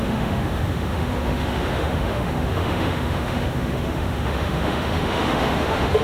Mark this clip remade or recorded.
remade